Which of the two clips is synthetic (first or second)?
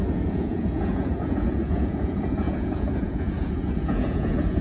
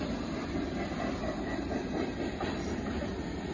first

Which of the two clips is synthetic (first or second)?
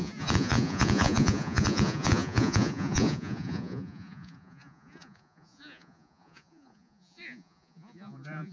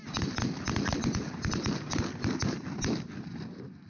first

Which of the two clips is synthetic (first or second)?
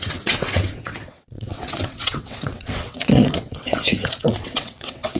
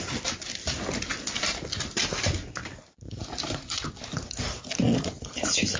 first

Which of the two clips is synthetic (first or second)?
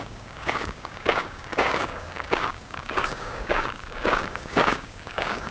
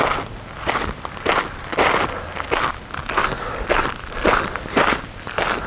first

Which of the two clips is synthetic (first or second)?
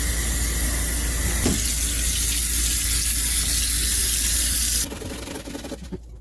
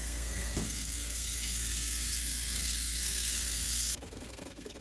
second